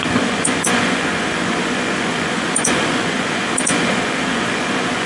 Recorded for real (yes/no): no